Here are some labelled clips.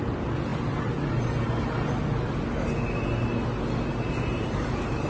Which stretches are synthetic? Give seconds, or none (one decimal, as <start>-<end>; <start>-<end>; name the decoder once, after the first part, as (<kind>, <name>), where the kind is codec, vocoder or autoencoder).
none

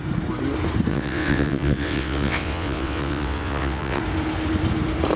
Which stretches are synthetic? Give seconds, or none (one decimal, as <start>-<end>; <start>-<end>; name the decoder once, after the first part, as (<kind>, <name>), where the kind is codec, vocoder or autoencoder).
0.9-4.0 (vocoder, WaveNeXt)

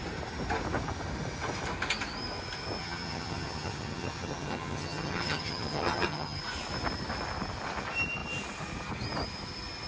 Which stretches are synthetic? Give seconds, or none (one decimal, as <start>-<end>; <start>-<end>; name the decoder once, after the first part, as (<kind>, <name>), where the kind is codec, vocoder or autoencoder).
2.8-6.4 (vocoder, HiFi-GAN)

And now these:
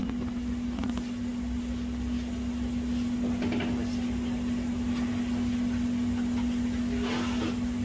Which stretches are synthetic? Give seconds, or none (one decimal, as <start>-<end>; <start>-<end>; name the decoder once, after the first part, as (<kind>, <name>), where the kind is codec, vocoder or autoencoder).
none

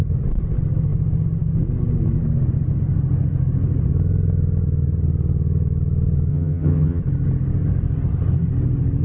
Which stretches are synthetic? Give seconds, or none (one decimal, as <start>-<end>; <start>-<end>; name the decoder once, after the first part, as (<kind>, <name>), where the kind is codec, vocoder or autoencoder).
6.3-7.0 (vocoder, HiFi-GAN)

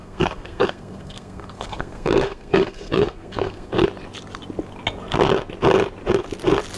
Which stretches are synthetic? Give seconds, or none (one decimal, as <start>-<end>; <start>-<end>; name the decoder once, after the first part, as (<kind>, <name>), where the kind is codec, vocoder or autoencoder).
0.0-3.7 (codec, SNAC)

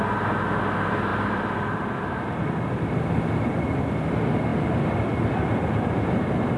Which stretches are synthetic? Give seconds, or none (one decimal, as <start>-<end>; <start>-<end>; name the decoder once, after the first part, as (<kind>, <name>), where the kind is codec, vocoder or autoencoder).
1.1-3.2 (vocoder, BigVGAN v2); 4.5-6.6